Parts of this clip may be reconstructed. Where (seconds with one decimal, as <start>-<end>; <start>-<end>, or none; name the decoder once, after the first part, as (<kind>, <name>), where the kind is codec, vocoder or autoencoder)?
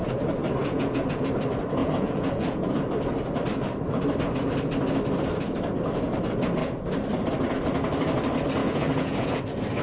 0.6-1.2 (vocoder, Vocos); 1.8-2.7; 8.6-9.4